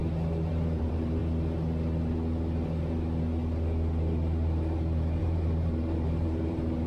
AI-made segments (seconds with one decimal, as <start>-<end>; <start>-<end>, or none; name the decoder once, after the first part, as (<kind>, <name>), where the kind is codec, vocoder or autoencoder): 0.5-1.2 (vocoder, BigVGAN v2); 5.2-6.9